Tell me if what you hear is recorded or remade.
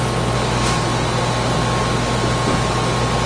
recorded